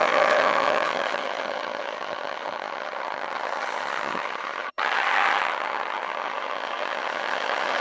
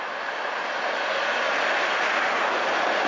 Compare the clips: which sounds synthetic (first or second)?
first